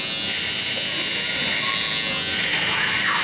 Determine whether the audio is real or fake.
real